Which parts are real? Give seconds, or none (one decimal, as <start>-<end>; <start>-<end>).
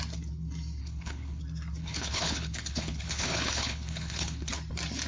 0.0-0.8; 1.4-1.8; 4.5-5.1